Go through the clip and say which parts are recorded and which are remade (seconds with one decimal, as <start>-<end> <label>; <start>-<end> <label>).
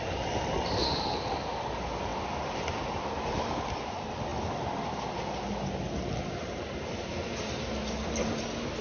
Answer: 0.0-8.8 recorded